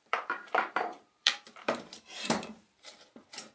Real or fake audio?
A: fake